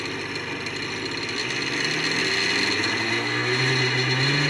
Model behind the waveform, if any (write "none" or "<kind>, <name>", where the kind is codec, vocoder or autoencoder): none